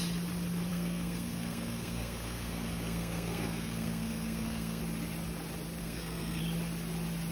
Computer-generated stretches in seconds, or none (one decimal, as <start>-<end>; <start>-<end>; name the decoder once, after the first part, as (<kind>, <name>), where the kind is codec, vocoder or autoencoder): 0.7-4.8 (codec, SNAC); 5.8-6.4